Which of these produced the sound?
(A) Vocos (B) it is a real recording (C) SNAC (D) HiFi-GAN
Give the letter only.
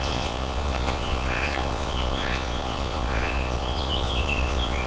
A